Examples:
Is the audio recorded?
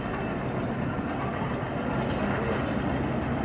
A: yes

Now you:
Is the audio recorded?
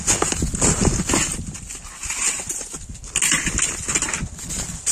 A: yes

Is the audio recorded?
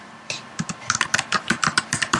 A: no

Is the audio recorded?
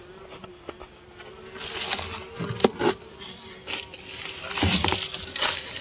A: yes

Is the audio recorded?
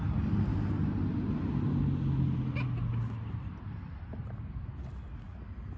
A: yes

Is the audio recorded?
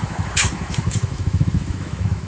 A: no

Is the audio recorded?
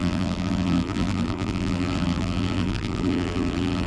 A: no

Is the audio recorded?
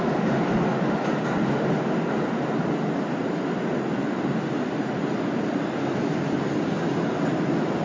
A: yes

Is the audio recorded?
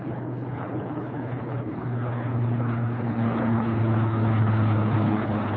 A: no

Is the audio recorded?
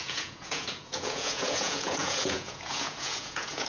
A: no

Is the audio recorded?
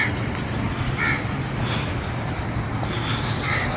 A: yes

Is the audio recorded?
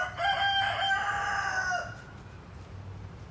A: yes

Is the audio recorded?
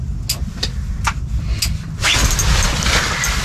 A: yes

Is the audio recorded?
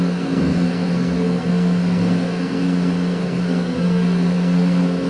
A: no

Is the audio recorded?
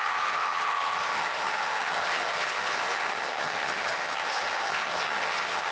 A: no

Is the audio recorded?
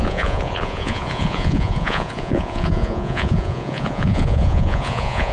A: no